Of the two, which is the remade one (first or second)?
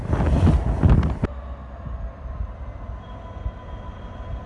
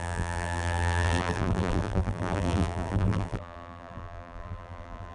second